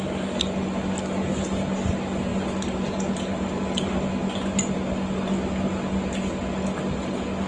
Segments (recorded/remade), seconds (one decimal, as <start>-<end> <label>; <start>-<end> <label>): 0.0-7.5 recorded